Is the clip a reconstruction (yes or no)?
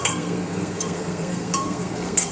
yes